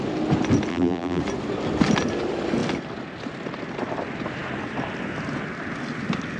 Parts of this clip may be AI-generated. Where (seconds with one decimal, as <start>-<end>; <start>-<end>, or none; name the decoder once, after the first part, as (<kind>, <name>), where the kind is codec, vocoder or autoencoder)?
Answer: 0.7-1.2 (vocoder, BigVGAN v2)